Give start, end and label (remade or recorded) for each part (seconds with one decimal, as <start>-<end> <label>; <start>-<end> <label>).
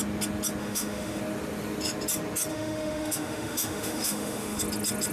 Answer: 0.0-0.6 recorded; 0.6-1.2 remade; 1.2-2.5 recorded; 2.5-4.6 remade; 4.6-5.1 recorded